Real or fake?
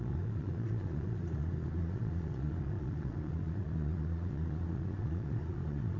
fake